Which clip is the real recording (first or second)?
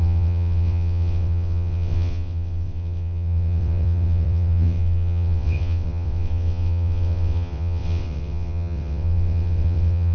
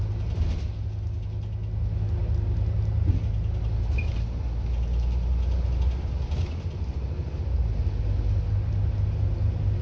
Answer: second